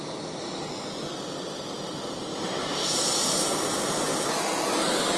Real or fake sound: real